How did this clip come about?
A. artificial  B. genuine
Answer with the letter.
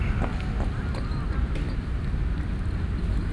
B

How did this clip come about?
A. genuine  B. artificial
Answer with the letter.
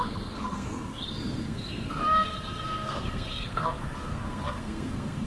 B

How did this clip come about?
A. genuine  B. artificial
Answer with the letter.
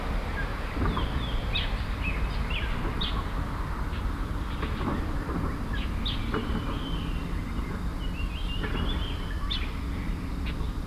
A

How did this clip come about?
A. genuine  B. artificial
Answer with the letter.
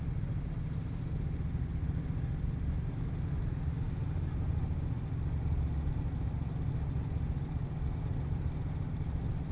A